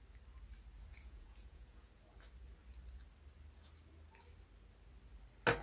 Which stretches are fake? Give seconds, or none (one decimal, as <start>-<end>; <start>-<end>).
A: 0.9-1.9